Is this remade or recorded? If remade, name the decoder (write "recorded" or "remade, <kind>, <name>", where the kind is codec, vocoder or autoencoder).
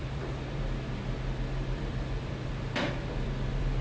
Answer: remade, vocoder, BigVGAN v2